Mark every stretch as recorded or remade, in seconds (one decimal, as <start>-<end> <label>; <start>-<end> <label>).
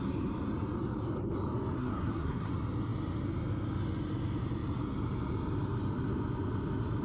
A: 0.0-1.8 recorded; 1.8-2.5 remade; 2.5-7.0 recorded